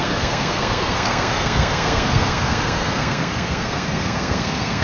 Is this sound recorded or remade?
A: remade